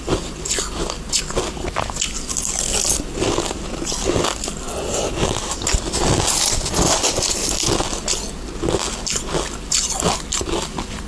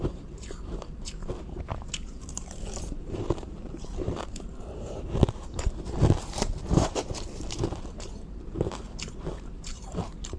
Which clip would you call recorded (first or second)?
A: first